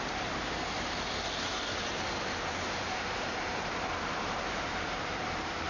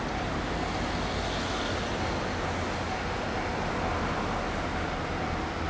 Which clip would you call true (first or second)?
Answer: second